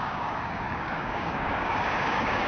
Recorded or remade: remade